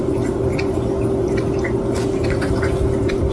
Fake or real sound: real